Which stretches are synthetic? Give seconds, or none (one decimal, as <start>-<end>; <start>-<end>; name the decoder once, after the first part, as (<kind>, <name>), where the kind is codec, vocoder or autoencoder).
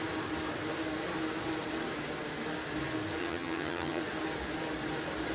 3.2-4.0 (vocoder, HiFi-GAN)